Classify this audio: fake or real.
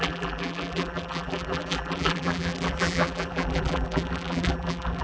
fake